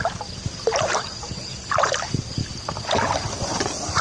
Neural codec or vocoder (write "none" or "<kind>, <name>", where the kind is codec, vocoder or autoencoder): none